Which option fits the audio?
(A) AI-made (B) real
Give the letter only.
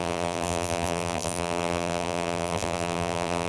A